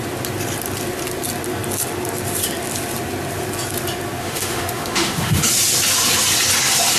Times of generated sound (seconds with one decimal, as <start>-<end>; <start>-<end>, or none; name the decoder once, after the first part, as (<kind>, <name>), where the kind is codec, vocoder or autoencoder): 4.2-5.4 (autoencoder, DAC-VAE)